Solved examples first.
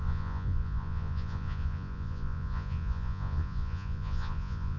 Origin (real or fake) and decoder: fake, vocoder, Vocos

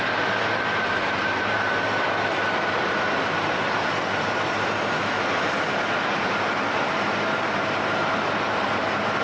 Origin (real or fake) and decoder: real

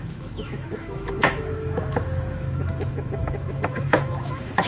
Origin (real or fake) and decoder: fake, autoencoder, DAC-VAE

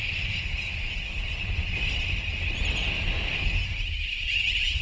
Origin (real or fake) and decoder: real